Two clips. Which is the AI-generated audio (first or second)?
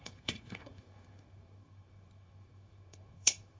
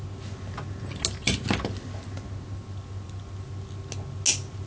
first